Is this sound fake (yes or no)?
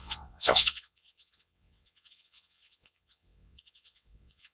yes